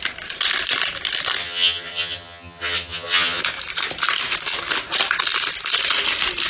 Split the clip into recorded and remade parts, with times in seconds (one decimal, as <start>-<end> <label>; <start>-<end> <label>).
0.0-1.4 recorded; 1.4-3.4 remade; 3.4-6.5 recorded